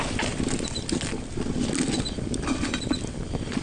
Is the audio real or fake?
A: real